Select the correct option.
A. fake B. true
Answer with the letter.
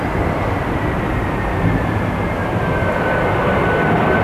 A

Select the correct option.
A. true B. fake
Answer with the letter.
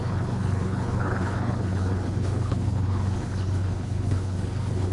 B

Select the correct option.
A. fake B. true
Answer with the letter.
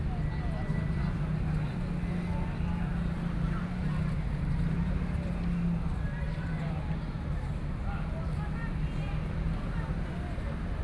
B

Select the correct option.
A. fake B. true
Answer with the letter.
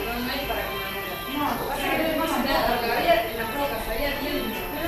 B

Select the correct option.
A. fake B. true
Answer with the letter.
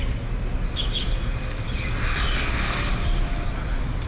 B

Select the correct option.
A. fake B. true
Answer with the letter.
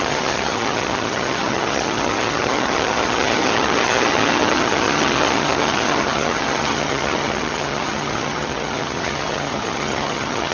A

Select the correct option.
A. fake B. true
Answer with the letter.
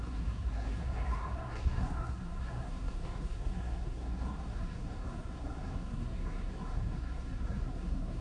A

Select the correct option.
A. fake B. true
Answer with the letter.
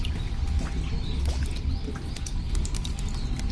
B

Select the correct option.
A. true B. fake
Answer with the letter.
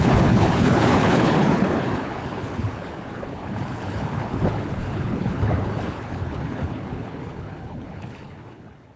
B